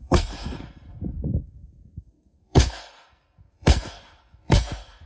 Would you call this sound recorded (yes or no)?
no